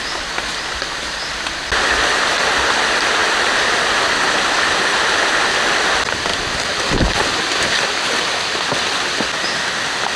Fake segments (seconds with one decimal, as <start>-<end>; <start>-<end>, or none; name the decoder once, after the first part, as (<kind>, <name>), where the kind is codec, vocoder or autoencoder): none